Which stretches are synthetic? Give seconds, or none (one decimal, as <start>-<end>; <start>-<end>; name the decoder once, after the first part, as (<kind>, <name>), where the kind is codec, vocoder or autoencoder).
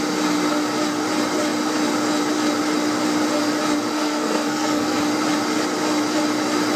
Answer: 3.9-5.0 (codec, SNAC)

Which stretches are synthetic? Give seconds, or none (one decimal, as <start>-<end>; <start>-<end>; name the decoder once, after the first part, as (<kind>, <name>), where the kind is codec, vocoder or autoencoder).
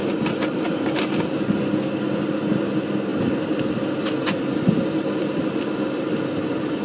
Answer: none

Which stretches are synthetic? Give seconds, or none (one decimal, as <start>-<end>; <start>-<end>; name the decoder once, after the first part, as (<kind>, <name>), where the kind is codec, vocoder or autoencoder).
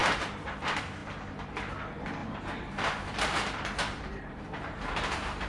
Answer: 2.2-5.5 (vocoder, BigVGAN v2)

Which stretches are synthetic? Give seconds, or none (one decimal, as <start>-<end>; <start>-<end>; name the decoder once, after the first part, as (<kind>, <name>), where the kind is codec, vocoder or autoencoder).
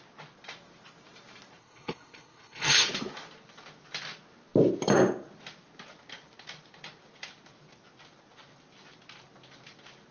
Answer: 1.6-2.9 (codec, HILCodec)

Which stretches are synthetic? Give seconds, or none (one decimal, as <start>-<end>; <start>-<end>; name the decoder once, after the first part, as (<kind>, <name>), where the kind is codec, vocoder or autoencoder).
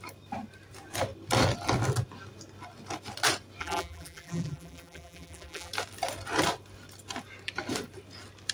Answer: 3.6-5.7 (vocoder, BigVGAN v2)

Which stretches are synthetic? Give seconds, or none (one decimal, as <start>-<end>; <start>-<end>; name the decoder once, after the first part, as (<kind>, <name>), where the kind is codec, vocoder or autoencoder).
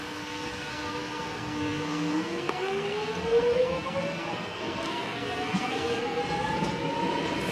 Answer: 0.0-6.2 (codec, SNAC)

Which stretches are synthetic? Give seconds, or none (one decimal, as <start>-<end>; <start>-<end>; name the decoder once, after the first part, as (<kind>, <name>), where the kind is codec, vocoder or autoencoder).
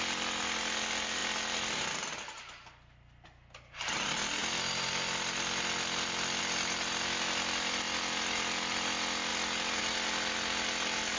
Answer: none